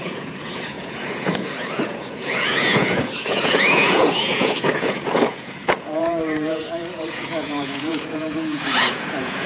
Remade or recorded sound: remade